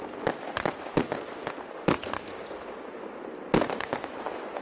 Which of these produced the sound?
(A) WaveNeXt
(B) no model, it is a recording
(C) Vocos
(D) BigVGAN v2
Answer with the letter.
B